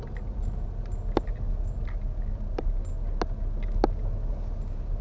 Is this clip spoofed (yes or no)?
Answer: no